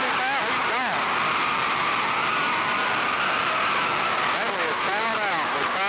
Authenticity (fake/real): real